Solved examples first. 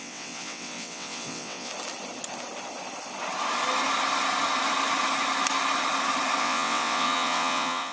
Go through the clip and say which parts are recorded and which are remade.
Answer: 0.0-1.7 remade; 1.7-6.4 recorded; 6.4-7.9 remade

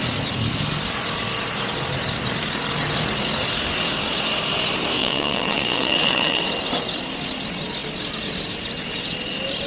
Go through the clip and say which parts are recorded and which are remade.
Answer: 0.0-5.0 recorded; 5.0-6.4 remade; 6.4-9.7 recorded

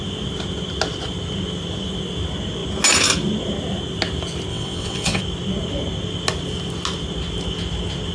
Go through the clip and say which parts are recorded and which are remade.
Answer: 0.0-4.5 recorded; 4.5-5.2 remade; 5.2-8.1 recorded